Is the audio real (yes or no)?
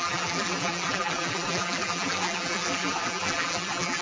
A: no